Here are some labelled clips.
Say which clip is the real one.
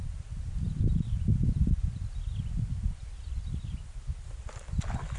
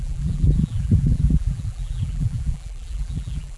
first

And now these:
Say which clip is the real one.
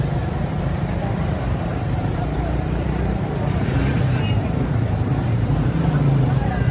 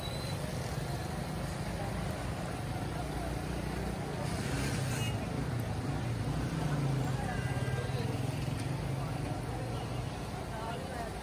second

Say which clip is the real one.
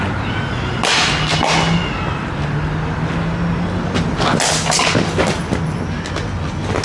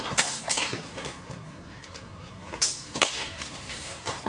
first